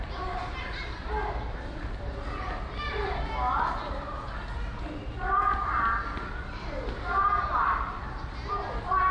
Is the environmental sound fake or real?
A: real